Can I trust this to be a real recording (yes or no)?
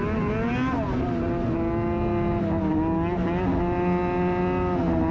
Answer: yes